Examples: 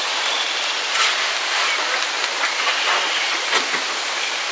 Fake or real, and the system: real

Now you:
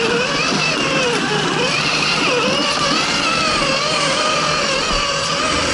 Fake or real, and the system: real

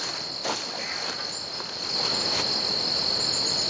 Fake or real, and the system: real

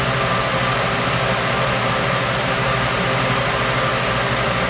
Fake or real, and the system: real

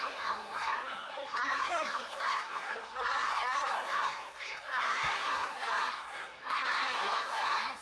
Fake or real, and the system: fake, codec, SNAC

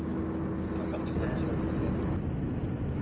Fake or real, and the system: real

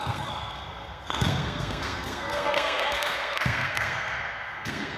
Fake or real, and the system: fake, codec, SNAC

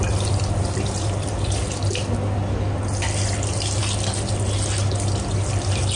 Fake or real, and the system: real